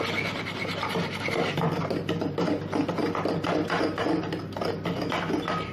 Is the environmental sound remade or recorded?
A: recorded